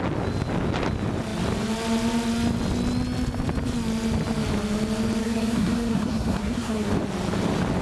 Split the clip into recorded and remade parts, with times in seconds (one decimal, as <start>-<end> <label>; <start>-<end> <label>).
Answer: 0.0-5.2 recorded; 5.2-6.9 remade; 6.9-7.8 recorded